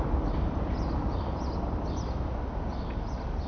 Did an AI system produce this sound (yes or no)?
no